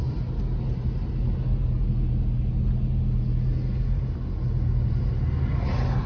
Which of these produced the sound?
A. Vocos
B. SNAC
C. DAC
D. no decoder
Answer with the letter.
D